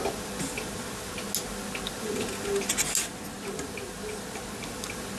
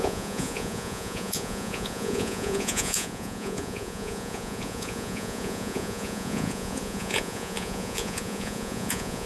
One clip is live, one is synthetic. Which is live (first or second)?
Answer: first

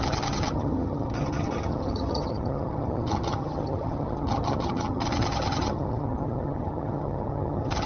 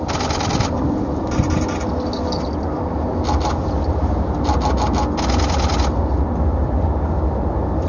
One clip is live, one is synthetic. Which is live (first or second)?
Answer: second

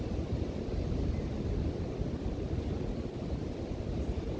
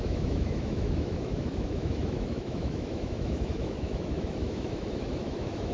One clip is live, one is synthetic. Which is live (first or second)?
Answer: first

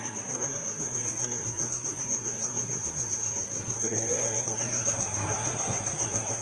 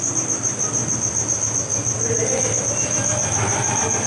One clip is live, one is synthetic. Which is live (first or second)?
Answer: second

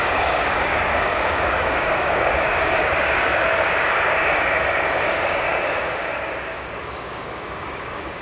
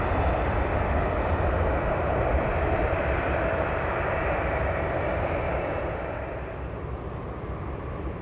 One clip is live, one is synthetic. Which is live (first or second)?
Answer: second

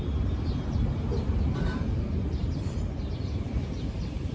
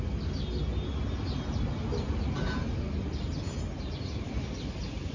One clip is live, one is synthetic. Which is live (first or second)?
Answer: second